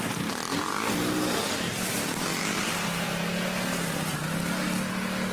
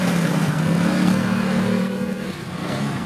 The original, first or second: first